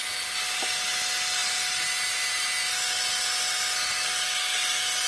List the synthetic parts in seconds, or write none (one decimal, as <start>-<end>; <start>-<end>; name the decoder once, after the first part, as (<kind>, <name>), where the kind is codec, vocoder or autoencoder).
none